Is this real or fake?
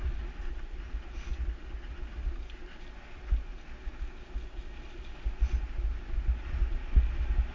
real